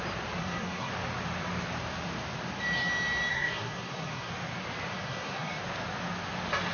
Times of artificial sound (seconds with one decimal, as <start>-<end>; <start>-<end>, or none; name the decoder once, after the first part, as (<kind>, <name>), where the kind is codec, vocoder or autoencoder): 0.4-0.9 (codec, SNAC); 3.3-4.3; 4.9-5.6